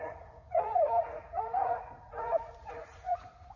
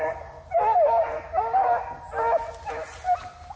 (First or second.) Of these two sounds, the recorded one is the second